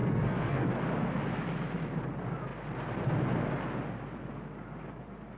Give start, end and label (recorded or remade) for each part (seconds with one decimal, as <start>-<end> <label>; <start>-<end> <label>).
0.0-0.7 remade; 0.7-5.4 recorded